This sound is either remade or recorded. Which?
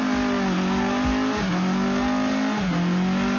recorded